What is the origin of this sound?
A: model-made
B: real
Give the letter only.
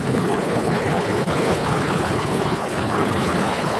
A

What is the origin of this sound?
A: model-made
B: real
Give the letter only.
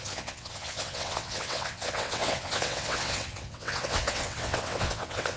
A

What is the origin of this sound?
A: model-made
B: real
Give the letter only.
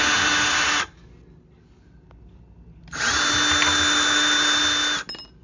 B